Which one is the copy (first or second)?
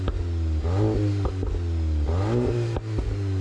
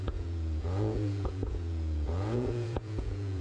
second